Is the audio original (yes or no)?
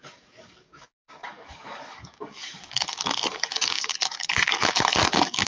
no